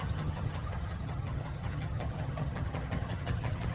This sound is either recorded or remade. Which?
remade